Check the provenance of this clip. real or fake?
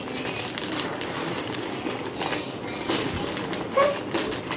real